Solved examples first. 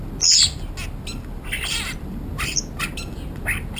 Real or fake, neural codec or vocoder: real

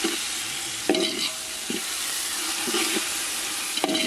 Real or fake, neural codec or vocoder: real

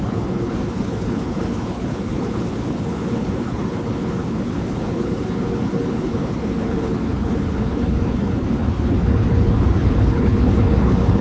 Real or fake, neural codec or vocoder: fake, codec, HILCodec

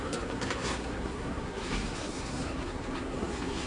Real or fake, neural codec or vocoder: fake, codec, SNAC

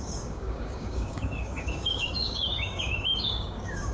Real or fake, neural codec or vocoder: fake, codec, DAC